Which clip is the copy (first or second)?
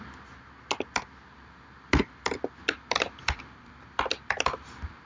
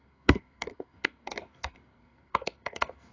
second